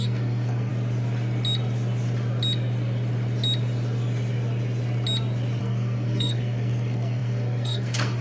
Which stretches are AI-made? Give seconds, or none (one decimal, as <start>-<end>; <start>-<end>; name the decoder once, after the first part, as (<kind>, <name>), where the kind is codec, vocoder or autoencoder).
0.0-0.7 (codec, SNAC); 5.6-8.2